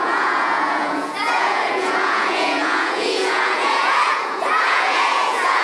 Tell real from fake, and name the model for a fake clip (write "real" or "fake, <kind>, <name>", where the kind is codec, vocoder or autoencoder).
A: fake, vocoder, Vocos